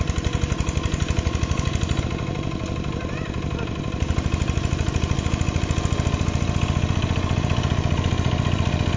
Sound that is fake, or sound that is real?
real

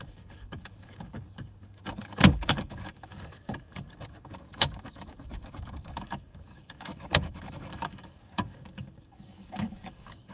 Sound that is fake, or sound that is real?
fake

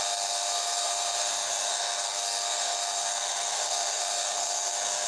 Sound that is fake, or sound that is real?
fake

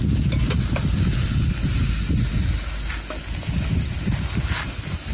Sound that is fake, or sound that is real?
real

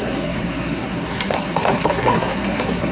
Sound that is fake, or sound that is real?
fake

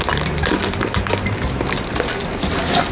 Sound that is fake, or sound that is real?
real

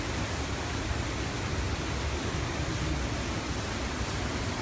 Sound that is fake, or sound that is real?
real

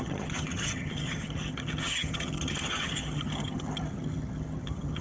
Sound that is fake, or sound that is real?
fake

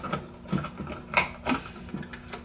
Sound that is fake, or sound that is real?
real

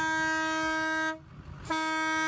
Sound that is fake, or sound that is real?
real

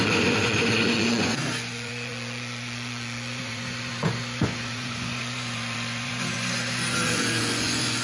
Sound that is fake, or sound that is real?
fake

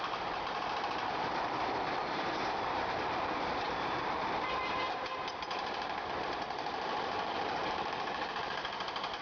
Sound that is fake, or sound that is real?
fake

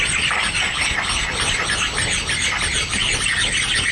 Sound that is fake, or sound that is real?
real